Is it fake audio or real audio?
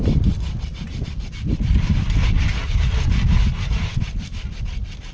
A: real